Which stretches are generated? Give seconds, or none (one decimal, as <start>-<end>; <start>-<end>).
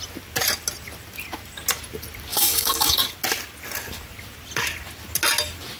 2.3-3.1